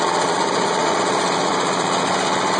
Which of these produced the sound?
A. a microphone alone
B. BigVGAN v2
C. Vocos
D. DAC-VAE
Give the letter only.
C